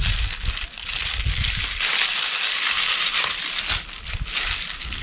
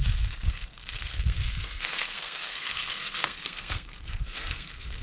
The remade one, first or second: second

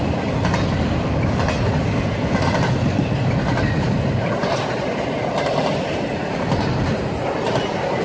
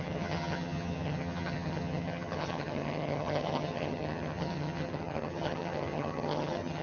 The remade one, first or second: second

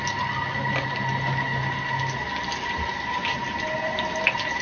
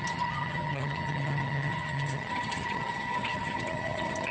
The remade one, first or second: second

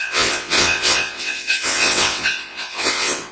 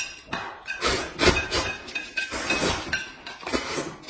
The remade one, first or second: first